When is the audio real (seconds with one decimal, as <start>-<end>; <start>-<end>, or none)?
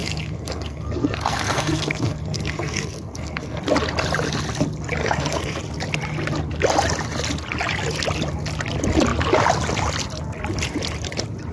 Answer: 3.6-5.0; 5.6-11.5